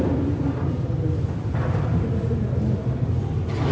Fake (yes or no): no